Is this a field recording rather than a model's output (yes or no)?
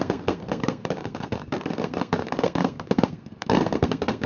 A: no